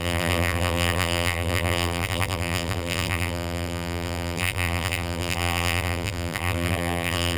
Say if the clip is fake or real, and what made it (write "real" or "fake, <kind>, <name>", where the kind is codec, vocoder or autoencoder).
fake, vocoder, BigVGAN v2